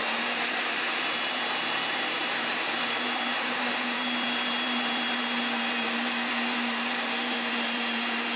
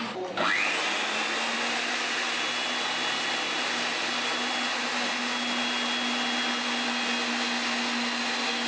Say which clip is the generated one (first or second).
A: first